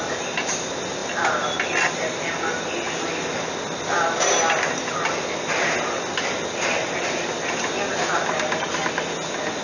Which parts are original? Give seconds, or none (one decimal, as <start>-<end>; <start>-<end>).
0.0-9.6